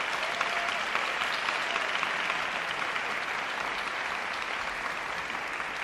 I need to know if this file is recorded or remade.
recorded